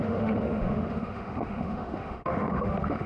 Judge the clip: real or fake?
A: fake